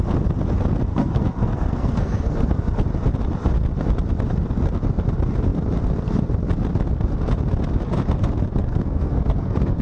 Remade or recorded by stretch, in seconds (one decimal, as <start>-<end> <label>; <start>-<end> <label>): 0.0-0.9 recorded; 0.9-2.5 remade; 2.5-8.6 recorded; 8.6-9.8 remade